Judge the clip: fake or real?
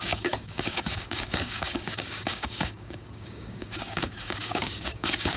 fake